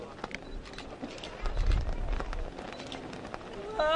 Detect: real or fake real